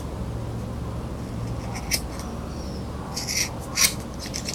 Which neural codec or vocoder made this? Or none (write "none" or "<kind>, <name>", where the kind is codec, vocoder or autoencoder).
none